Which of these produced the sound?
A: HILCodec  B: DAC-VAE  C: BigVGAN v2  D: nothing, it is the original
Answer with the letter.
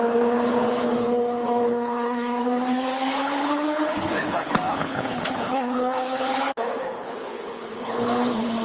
A